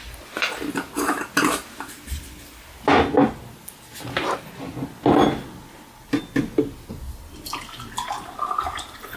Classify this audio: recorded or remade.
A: recorded